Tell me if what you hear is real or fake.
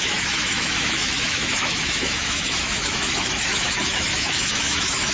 fake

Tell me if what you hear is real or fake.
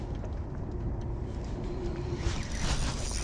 real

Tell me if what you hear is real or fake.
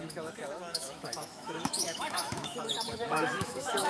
fake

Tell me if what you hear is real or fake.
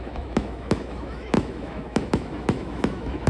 fake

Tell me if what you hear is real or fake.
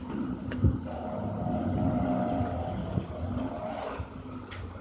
real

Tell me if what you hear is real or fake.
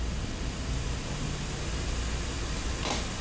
real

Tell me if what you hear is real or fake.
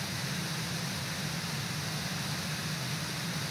real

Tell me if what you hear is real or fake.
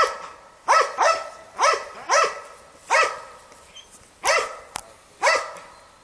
real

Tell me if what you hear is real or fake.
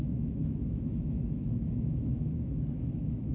fake